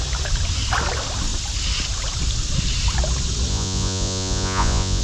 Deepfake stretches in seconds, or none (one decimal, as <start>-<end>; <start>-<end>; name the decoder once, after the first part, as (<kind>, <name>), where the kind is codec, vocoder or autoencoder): 3.5-5.0 (vocoder, Vocos)